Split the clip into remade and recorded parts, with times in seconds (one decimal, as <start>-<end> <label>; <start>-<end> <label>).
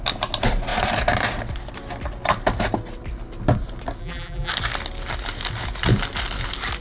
0.0-4.0 recorded; 4.0-4.5 remade; 4.5-6.8 recorded